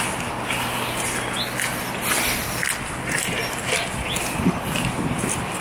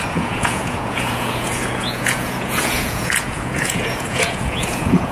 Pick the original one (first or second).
first